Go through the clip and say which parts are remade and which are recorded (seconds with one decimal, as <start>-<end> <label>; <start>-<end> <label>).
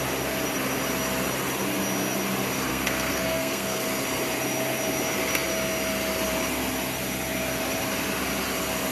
0.0-2.7 recorded; 2.7-3.8 remade; 3.8-8.9 recorded